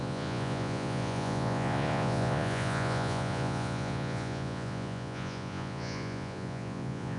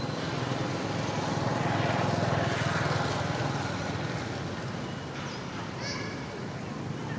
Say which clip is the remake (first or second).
first